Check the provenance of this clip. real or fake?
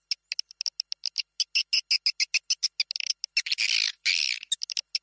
real